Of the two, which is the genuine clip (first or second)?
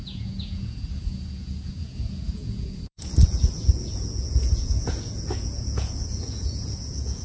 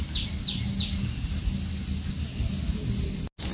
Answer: second